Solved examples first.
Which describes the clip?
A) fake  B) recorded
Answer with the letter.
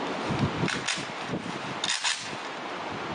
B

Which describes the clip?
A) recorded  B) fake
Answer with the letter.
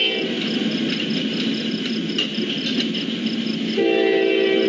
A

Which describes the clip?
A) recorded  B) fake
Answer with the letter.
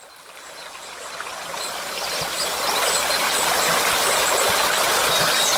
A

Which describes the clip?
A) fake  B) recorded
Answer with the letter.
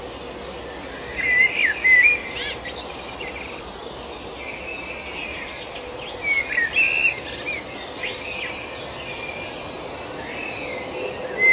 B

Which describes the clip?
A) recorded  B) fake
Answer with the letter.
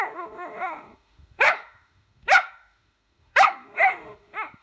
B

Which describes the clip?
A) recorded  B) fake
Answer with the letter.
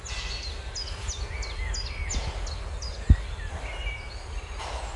A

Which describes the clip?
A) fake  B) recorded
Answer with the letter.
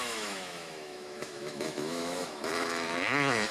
A